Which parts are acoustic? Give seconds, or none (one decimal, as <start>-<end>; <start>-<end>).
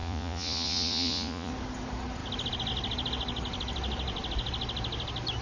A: 1.5-5.4